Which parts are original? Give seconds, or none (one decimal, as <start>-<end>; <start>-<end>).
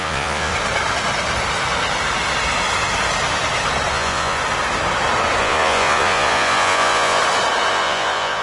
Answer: 0.5-3.9; 4.4-5.4; 7.2-7.7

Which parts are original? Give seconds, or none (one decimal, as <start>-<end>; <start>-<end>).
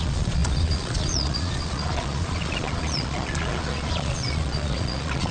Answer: none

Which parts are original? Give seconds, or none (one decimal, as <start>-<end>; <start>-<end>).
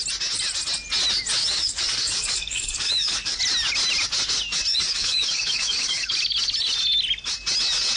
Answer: 0.0-1.4; 3.4-4.7; 6.1-8.0